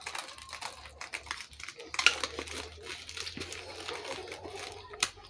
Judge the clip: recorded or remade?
recorded